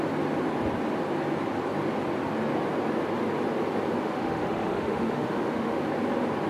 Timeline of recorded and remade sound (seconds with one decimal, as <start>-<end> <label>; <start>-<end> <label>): 0.0-4.0 recorded; 4.0-5.8 remade; 5.8-6.5 recorded